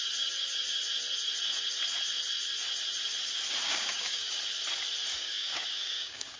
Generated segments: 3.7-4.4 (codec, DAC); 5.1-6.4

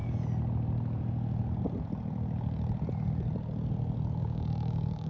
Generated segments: 4.2-5.1 (codec, DAC)

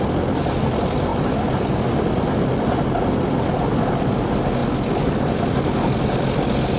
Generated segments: none

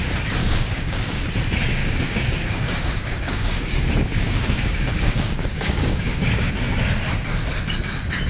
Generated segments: 0.4-1.2 (codec, DAC); 1.8-6.5